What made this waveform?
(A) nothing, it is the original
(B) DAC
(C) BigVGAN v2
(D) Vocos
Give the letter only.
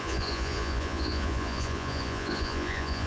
D